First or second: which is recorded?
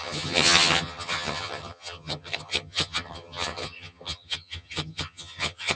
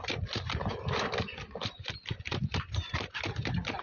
second